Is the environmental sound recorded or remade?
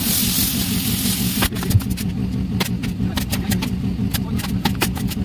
recorded